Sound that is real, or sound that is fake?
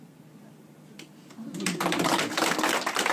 real